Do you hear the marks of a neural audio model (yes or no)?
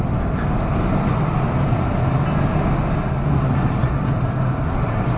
no